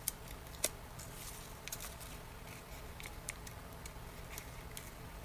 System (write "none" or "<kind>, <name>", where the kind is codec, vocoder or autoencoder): none